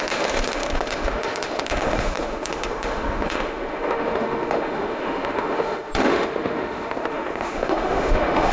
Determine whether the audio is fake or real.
fake